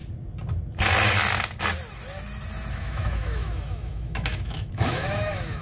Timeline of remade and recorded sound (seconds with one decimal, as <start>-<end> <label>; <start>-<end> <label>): 0.0-2.7 recorded; 2.7-5.6 remade